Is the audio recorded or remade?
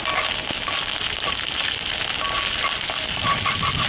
recorded